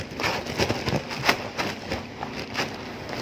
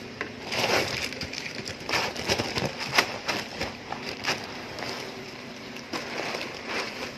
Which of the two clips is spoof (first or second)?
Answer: second